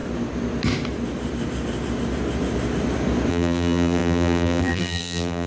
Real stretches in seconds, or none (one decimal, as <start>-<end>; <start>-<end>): 0.0-3.3